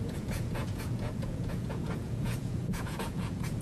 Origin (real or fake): fake